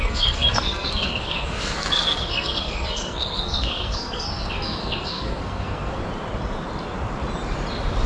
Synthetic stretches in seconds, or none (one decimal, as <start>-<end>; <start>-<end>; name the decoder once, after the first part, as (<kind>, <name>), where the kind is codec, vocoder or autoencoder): 0.0-6.0 (codec, SNAC)